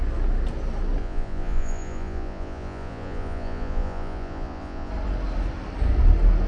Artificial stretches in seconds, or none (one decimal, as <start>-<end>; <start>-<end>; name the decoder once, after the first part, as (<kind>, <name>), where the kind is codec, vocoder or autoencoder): 1.0-4.9 (vocoder, Vocos)